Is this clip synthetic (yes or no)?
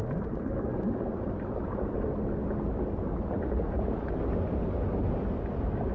no